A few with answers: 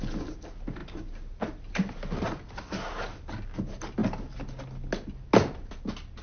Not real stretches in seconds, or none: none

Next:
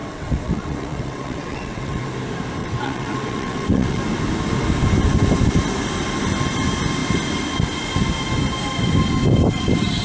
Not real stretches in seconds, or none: 0.0-2.1 (vocoder, WaveNeXt); 2.6-4.0